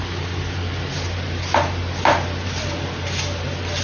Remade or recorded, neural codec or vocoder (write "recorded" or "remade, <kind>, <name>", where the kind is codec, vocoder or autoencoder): recorded